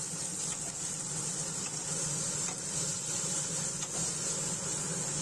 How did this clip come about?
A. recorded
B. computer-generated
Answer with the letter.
A